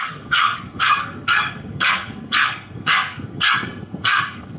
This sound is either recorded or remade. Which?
remade